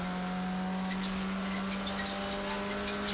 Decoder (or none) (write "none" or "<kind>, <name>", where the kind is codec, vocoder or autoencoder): none